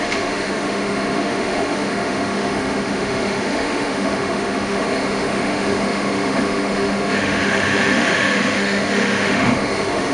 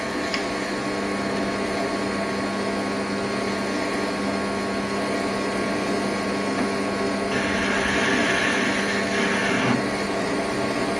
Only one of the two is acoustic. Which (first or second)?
second